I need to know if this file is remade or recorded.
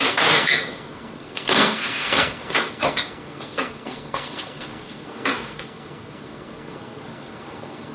remade